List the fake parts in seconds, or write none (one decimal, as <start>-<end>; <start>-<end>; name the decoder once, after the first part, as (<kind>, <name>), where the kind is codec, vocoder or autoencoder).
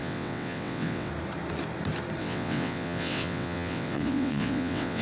0.0-1.1 (vocoder, WaveNeXt); 2.2-5.0